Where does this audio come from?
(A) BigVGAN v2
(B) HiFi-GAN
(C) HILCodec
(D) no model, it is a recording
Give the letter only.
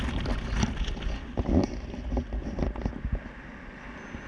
D